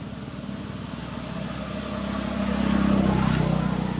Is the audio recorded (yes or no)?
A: yes